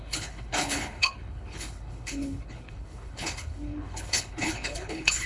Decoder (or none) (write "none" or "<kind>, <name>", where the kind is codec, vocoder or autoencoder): codec, HILCodec